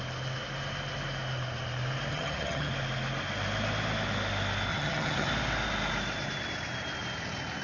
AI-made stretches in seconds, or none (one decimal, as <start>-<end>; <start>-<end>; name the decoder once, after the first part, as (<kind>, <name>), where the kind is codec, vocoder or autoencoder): 2.1-2.7 (vocoder, HiFi-GAN); 4.7-5.3